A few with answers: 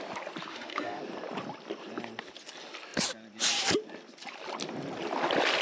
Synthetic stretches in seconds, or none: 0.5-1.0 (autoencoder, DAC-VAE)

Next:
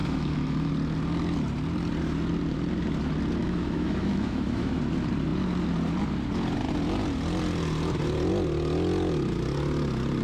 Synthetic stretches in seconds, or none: 0.0-0.7 (autoencoder, DAC-VAE); 3.4-4.8

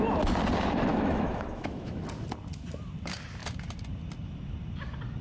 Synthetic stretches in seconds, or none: 0.9-2.0 (autoencoder, DAC-VAE)

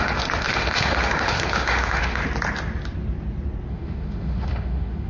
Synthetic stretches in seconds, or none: 0.0-2.2 (autoencoder, DAC-VAE); 3.7-5.1

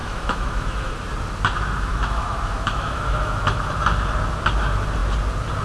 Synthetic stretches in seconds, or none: 0.0-0.9 (autoencoder, DAC-VAE); 1.9-3.7

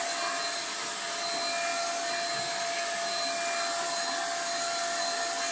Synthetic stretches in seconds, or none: none

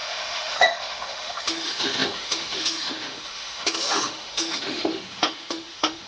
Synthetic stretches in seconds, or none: 0.0-6.1 (autoencoder, DAC-VAE)

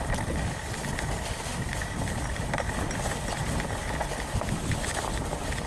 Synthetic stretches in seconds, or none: none